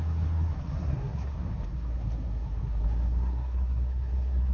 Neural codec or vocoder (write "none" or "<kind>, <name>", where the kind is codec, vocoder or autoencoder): codec, SNAC